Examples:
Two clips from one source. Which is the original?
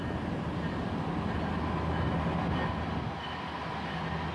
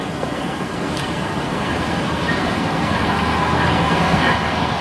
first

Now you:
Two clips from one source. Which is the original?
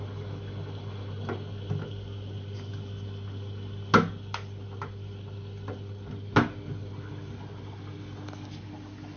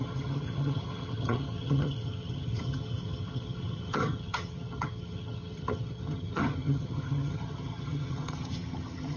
first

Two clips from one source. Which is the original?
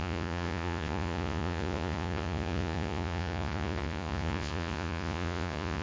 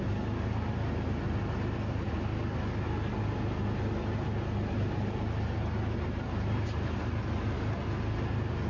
second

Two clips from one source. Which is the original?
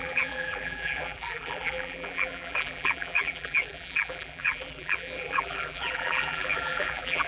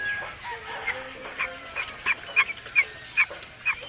second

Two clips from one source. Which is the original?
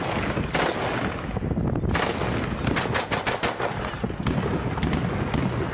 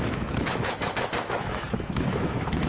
first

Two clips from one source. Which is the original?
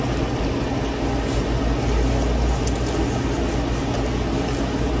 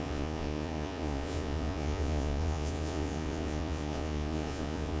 first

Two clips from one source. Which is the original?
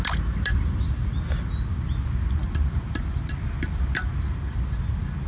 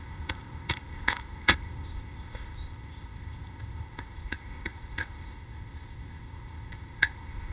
first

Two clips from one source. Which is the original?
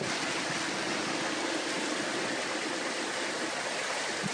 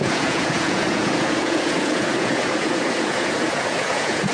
first